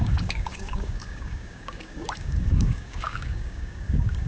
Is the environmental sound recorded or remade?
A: remade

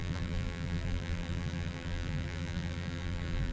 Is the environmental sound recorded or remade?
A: remade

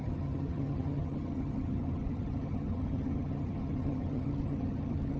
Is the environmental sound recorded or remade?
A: remade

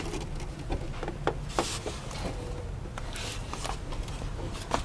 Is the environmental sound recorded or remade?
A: recorded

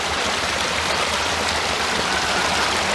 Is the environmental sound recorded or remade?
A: recorded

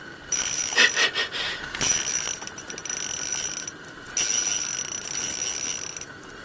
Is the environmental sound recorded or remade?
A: recorded